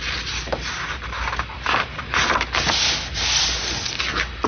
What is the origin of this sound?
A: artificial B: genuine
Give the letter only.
B